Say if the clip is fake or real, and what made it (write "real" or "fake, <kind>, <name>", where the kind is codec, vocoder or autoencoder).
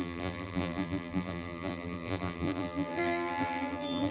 fake, vocoder, BigVGAN v2